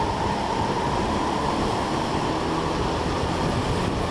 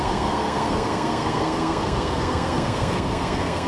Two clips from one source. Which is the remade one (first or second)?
second